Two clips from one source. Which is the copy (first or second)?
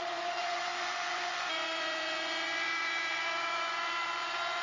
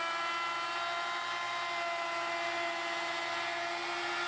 first